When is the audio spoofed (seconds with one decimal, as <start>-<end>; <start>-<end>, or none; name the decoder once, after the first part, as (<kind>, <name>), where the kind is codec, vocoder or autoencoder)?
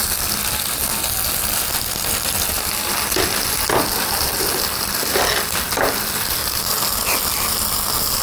none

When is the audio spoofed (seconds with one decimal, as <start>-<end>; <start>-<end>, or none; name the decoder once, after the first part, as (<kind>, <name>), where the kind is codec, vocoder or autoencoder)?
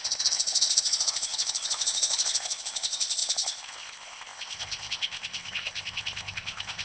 0.0-6.8 (codec, ZipCodec)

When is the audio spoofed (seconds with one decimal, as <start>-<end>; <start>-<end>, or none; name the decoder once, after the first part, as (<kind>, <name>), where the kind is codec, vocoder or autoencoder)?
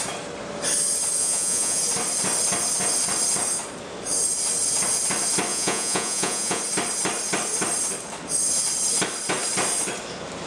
1.2-1.8 (vocoder, Vocos); 5.5-6.6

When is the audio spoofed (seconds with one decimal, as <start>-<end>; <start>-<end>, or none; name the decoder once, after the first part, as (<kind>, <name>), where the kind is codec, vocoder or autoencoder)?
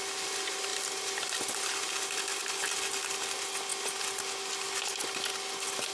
none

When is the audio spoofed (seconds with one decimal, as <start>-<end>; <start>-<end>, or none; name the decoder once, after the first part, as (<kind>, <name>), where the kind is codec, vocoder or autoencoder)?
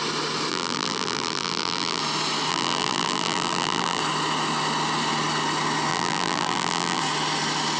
0.5-2.0 (vocoder, BigVGAN v2); 2.5-4.0; 5.9-7.0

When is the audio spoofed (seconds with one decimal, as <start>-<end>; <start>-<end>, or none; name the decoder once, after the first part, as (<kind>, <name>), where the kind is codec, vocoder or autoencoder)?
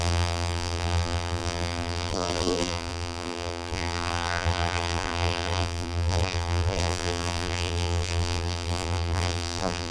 0.0-9.9 (vocoder, BigVGAN v2)